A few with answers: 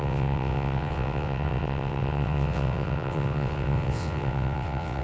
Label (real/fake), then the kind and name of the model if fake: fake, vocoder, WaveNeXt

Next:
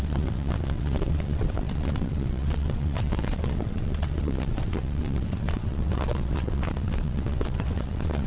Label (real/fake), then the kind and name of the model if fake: fake, vocoder, WaveNeXt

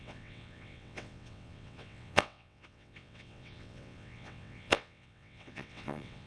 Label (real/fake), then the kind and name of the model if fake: fake, vocoder, WaveNeXt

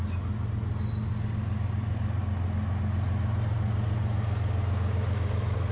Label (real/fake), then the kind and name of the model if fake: real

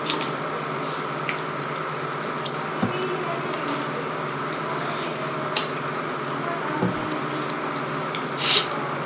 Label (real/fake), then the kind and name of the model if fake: real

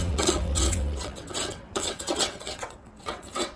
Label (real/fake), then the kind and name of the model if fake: fake, vocoder, WaveNeXt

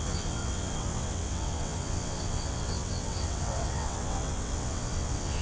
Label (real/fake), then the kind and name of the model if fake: fake, vocoder, WaveNeXt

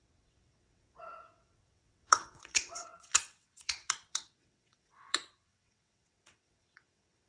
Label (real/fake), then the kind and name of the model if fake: fake, vocoder, WaveNeXt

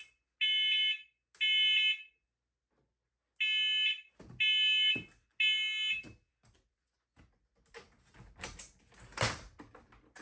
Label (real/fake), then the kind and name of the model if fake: real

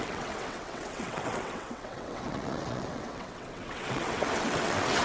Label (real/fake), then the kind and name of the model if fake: fake, vocoder, WaveNeXt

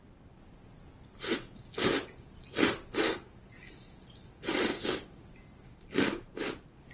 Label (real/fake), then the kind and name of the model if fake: real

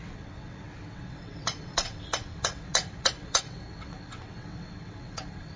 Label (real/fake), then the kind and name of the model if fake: fake, vocoder, WaveNeXt